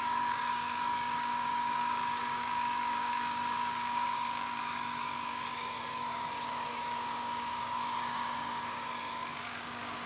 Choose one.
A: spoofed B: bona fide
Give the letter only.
A